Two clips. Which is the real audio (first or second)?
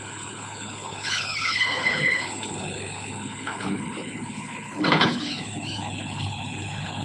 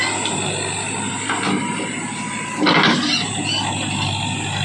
second